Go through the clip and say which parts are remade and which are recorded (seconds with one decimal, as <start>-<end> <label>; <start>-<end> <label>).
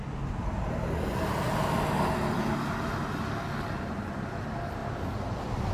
0.0-5.7 recorded